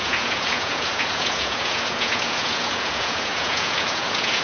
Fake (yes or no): yes